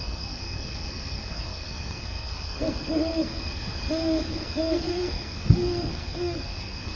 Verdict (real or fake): fake